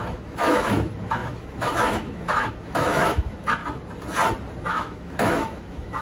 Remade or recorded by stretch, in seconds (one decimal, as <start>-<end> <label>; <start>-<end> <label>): 0.0-3.6 remade; 3.6-4.7 recorded; 4.7-6.0 remade